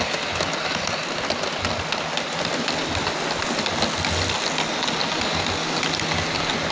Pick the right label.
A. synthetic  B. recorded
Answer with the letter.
B